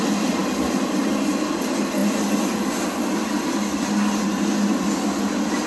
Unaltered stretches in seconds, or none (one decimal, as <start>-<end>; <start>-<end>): 0.0-0.4; 1.0-5.7